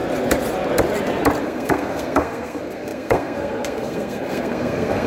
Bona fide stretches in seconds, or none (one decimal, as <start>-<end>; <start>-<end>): 0.0-1.4